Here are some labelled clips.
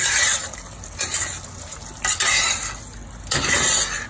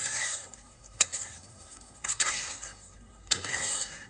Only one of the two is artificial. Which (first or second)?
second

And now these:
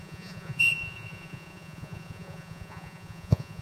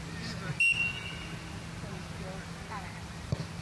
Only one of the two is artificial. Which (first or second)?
first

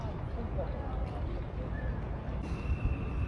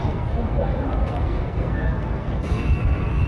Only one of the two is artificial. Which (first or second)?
second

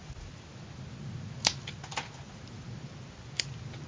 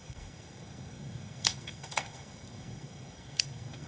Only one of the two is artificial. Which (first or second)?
second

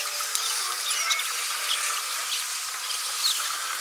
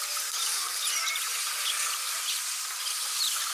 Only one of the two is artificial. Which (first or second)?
second